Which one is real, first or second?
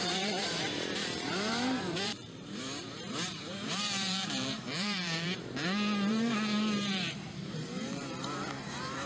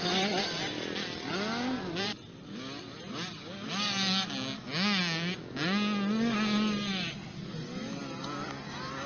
second